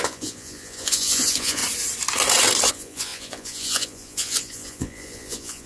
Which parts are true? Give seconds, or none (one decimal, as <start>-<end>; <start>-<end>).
1.6-2.7

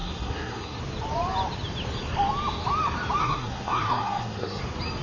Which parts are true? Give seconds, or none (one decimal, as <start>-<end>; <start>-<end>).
0.8-3.2; 4.6-5.0

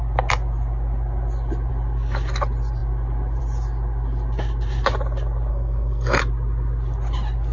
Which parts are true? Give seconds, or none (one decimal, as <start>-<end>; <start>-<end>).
0.0-5.5; 6.2-7.5